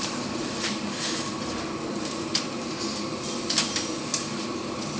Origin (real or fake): real